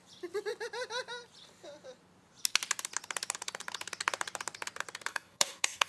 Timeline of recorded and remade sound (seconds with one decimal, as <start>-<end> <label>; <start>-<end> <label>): 0.0-5.1 recorded; 5.1-5.9 remade